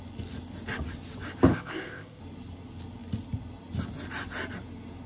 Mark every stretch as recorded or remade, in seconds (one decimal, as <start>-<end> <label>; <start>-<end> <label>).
0.0-1.5 recorded; 1.5-2.2 remade; 2.2-5.1 recorded